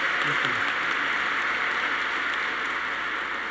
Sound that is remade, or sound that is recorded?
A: recorded